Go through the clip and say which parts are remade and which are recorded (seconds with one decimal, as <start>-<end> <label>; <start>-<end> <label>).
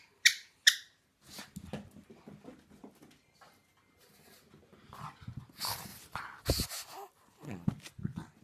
0.0-8.4 recorded